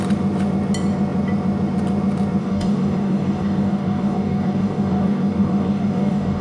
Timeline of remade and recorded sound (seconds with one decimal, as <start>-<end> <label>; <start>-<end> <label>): 0.0-2.4 recorded; 2.4-6.4 remade